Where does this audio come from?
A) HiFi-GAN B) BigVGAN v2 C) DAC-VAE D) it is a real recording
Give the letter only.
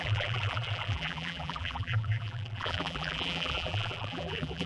B